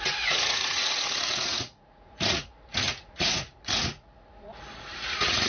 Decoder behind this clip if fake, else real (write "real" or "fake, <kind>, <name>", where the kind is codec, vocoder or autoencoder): fake, vocoder, Vocos